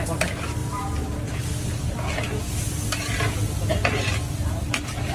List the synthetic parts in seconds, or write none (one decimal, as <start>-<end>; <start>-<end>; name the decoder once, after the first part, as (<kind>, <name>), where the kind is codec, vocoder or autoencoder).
0.6-1.4 (vocoder, BigVGAN v2)